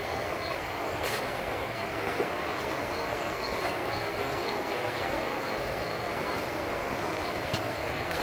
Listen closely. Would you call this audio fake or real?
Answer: fake